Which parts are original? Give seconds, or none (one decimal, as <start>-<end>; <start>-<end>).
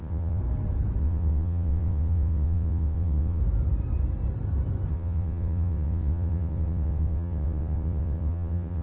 0.4-1.0; 3.4-4.9